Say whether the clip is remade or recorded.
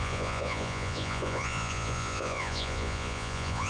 remade